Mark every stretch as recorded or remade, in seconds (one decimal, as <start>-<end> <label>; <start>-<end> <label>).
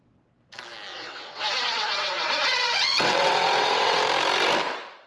0.0-0.9 recorded; 0.9-4.0 remade; 4.0-5.1 recorded